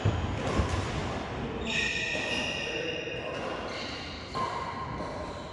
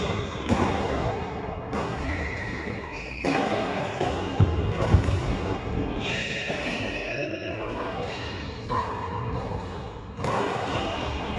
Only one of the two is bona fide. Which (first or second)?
first